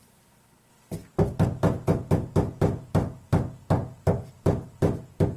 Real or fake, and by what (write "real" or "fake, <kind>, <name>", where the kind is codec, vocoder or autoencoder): real